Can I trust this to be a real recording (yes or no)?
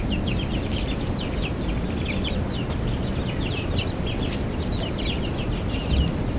yes